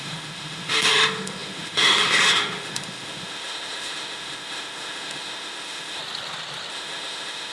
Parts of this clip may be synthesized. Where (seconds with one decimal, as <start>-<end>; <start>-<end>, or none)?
0.0-6.0; 6.7-7.5